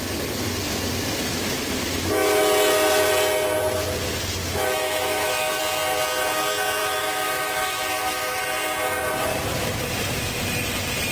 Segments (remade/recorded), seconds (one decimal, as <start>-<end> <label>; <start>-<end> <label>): 0.0-1.3 recorded; 1.3-2.4 remade; 2.4-4.4 recorded; 4.4-5.6 remade; 5.6-6.8 recorded; 6.8-8.4 remade; 8.4-11.1 recorded

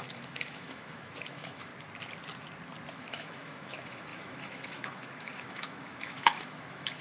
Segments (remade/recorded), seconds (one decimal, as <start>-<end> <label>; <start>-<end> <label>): 0.0-1.7 remade; 1.7-2.9 recorded; 2.9-7.0 remade

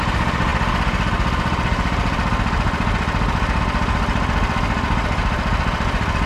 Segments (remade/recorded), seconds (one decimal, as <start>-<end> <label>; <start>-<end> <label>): 0.0-6.3 recorded

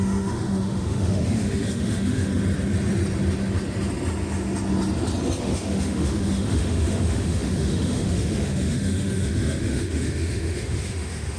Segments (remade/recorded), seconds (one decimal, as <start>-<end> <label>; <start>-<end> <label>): 0.0-2.3 remade; 2.3-5.4 recorded; 5.4-11.4 remade

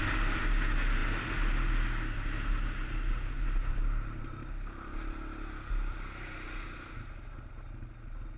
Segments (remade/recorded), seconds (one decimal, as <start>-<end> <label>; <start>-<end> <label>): 0.0-8.4 recorded

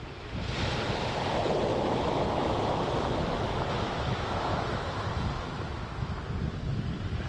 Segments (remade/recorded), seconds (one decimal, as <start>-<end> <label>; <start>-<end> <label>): 0.0-1.7 recorded; 1.7-6.1 remade; 6.1-7.3 recorded

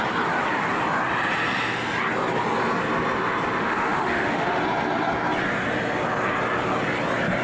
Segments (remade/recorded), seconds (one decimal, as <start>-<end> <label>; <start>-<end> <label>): 0.0-3.6 recorded; 3.6-4.6 remade; 4.6-7.4 recorded

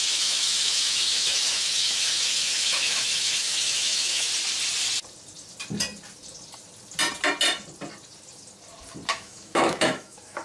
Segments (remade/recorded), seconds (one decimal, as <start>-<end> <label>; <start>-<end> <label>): 0.0-4.3 remade; 4.3-9.1 recorded; 9.1-10.4 remade